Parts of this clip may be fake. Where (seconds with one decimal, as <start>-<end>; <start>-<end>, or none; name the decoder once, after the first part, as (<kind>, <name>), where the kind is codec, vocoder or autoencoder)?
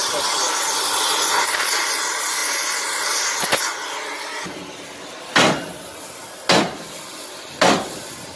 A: none